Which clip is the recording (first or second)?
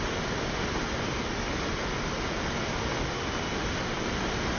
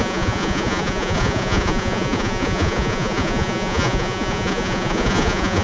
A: first